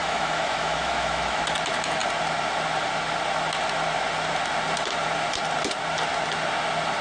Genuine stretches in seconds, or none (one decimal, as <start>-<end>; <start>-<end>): 1.4-7.0